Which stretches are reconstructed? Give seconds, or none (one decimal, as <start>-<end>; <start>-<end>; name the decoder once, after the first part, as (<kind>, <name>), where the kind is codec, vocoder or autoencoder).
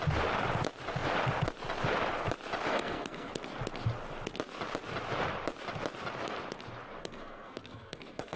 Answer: 2.7-3.3 (codec, SNAC); 7.0-8.4